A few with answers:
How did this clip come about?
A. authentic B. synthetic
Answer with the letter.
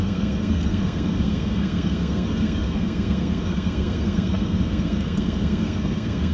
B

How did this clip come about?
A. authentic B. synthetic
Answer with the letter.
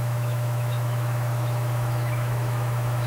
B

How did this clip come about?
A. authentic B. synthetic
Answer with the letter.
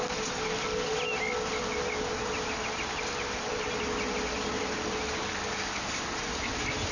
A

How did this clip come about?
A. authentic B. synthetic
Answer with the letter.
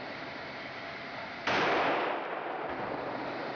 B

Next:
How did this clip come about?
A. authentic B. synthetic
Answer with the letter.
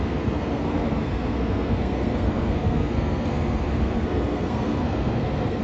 B